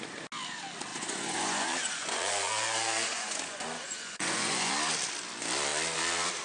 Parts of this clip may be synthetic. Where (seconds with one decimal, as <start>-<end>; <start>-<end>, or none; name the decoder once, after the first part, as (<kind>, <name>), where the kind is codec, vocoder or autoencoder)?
0.9-4.7 (vocoder, Vocos)